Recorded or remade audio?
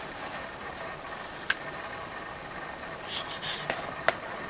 recorded